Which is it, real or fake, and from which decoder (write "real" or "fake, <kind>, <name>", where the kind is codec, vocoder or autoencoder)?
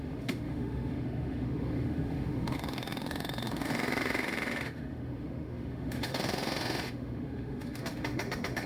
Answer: fake, autoencoder, DAC-VAE